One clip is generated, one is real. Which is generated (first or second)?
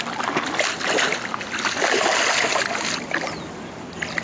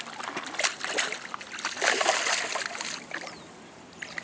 second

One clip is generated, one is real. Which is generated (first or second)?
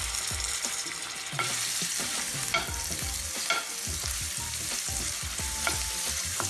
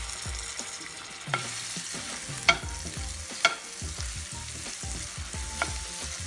first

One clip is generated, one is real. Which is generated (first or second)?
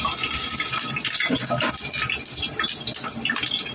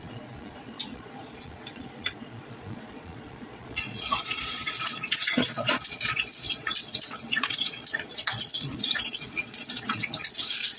second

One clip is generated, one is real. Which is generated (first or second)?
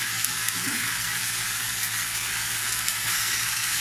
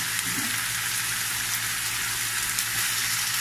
first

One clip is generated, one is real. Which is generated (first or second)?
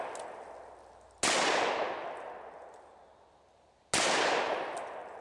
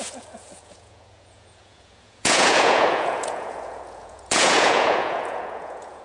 second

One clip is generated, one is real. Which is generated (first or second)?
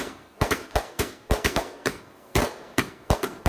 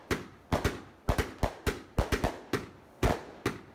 first